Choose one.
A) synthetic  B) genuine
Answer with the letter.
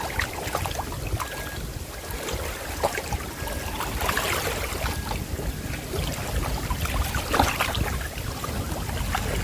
B